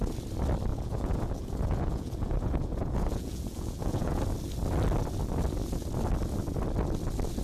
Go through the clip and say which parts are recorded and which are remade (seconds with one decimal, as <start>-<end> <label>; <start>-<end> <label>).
0.0-0.7 recorded; 0.7-4.2 remade; 4.2-7.4 recorded